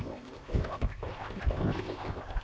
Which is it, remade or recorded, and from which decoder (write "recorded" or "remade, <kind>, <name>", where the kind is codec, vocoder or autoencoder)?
remade, codec, ZipCodec